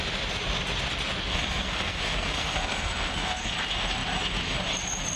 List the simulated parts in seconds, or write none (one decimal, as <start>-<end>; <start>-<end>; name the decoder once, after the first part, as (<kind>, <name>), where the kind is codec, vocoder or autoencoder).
1.3-3.5 (codec, SNAC)